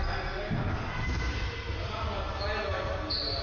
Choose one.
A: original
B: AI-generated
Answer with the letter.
A